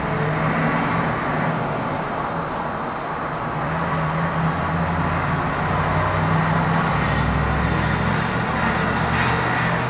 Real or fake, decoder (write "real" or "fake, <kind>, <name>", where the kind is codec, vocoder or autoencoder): real